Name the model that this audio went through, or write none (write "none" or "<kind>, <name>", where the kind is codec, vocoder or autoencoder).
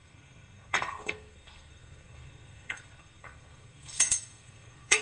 codec, SNAC